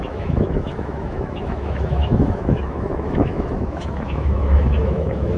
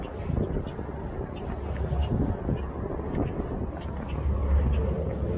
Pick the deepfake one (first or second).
first